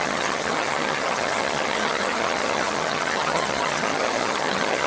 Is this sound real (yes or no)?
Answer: no